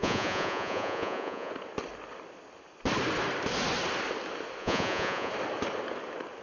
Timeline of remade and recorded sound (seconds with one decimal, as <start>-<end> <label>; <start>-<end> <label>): 0.0-1.5 remade; 1.5-4.6 recorded; 4.6-5.3 remade; 5.3-6.4 recorded